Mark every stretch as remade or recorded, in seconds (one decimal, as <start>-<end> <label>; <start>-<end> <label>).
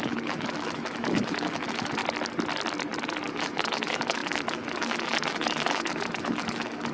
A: 0.0-2.0 remade; 2.0-3.3 recorded; 3.3-6.9 remade